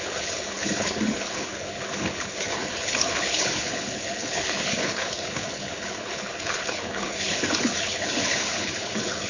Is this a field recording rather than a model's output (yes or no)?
no